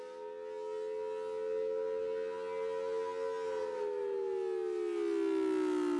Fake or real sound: real